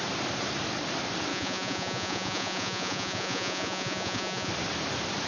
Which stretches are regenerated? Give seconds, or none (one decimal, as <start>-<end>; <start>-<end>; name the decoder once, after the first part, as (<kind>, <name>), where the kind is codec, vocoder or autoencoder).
1.3-4.5 (vocoder, Vocos)